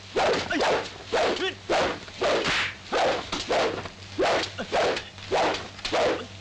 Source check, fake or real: real